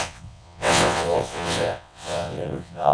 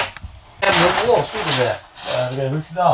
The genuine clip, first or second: second